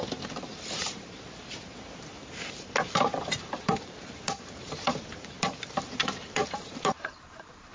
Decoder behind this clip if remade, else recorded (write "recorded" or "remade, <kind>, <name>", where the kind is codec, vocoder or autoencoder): remade, vocoder, BigVGAN v2